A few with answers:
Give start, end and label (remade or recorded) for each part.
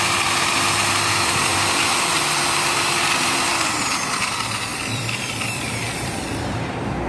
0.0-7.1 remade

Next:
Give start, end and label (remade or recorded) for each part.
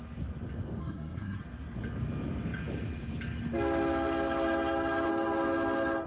0.0-0.8 recorded; 0.8-1.4 remade; 1.4-6.1 recorded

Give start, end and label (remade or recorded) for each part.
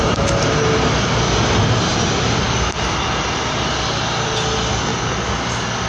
0.0-5.9 recorded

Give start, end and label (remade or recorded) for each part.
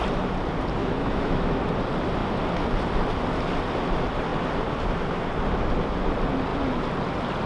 0.0-0.8 recorded; 0.8-1.6 remade; 1.6-7.5 recorded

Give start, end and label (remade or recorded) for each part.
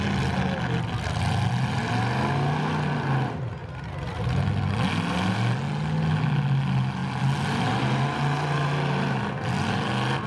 0.0-10.3 recorded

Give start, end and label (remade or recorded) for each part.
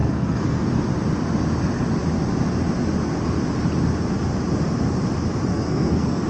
0.0-0.7 remade; 0.7-5.5 recorded; 5.5-6.3 remade